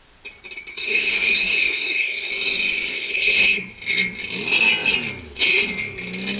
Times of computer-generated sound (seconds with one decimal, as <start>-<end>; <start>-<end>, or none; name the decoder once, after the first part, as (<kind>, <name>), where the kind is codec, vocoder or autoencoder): 0.7-2.3 (codec, SNAC); 2.9-3.6